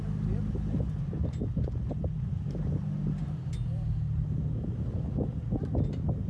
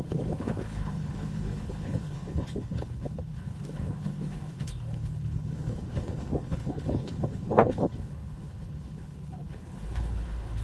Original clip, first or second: first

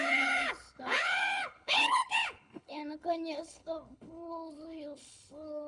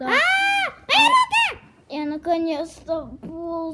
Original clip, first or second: second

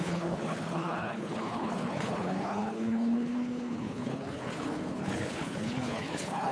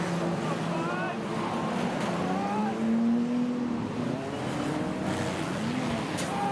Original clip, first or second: second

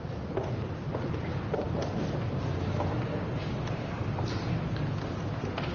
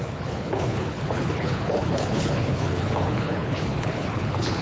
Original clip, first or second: first